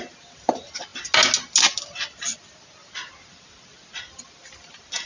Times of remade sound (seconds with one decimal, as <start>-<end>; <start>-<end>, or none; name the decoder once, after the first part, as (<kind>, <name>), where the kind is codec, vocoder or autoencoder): none